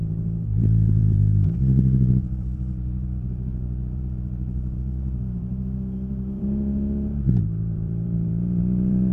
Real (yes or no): no